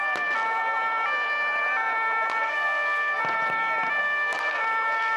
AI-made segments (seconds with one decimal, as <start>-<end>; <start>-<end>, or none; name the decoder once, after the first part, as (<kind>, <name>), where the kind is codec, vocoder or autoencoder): 2.4-3.2 (codec, SNAC); 4.0-4.6